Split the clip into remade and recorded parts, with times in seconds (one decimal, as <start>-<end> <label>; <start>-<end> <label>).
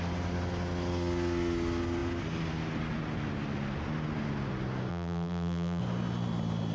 0.0-4.9 recorded; 4.9-5.8 remade; 5.8-6.7 recorded